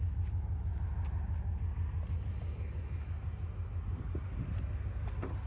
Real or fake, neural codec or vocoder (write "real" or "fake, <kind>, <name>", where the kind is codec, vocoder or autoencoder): real